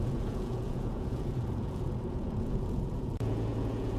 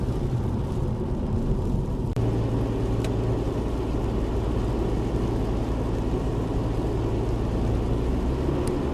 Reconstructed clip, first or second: first